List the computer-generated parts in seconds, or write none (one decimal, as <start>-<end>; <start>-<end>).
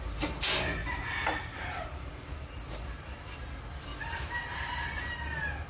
0.8-2.3; 3.9-4.6